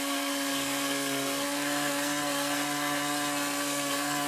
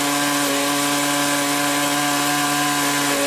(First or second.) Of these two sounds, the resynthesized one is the first